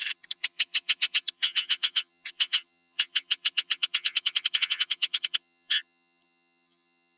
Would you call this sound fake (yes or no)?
yes